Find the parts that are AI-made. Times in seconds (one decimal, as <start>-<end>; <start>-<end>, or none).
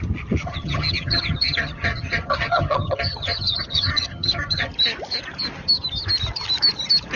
0.4-4.7